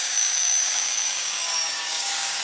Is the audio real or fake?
fake